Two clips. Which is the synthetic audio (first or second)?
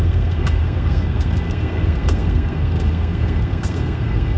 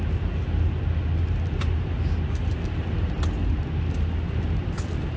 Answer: first